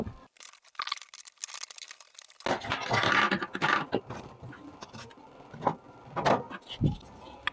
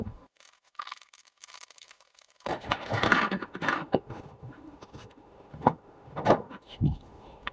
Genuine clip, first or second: first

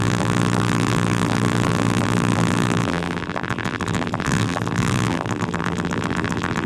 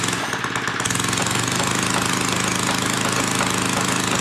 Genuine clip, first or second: second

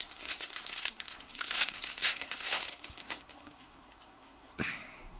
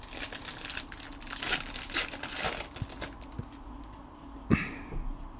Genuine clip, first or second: second